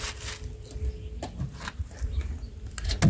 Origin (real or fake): real